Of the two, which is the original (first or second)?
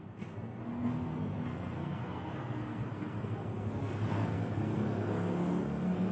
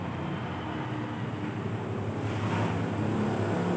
second